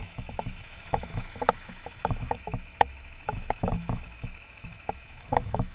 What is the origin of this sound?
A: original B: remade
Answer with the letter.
B